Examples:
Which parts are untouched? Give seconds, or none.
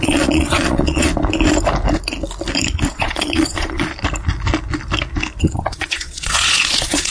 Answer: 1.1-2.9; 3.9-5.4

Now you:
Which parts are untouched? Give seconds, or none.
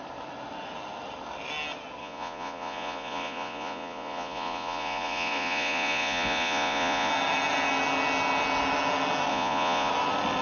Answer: 0.0-2.0; 7.1-9.3; 9.9-10.4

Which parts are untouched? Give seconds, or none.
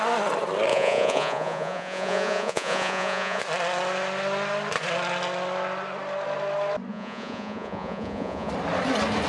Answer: 0.0-0.7; 3.4-6.9; 8.5-9.3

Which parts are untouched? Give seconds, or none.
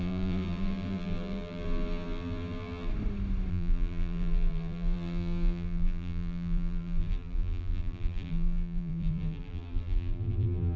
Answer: 2.9-3.5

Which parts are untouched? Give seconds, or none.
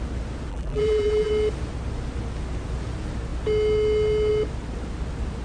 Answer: 0.0-0.5; 1.3-5.4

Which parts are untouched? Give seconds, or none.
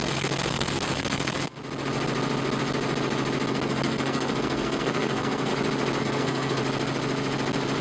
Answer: 1.6-3.5; 5.5-6.0; 6.6-7.8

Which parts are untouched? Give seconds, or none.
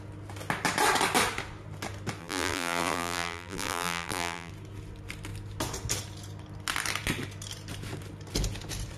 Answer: 0.0-2.2; 4.5-9.0